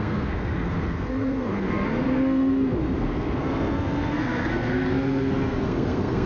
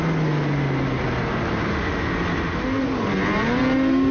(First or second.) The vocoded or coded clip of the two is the first